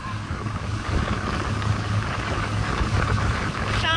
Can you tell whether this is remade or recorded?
remade